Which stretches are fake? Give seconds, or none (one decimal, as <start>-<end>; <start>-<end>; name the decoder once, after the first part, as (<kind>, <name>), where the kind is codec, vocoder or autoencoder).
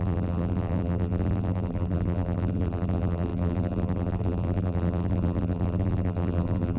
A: 0.0-6.8 (vocoder, BigVGAN v2)